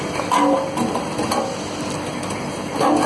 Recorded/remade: recorded